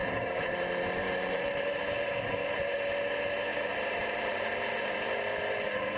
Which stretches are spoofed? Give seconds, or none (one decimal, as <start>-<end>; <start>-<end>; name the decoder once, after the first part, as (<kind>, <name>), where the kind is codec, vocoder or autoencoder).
0.0-0.5 (vocoder, BigVGAN v2); 1.0-1.8; 3.5-4.7